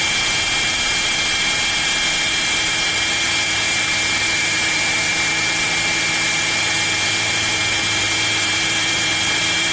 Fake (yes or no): yes